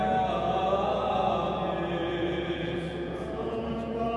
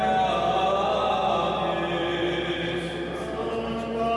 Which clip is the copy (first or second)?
first